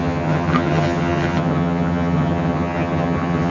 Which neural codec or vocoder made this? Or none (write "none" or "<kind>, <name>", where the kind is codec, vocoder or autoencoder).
vocoder, HiFi-GAN